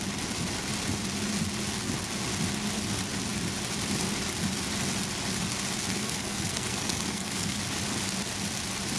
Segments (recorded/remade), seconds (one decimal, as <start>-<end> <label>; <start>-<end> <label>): 0.0-5.9 recorded; 5.9-7.6 remade; 7.6-9.0 recorded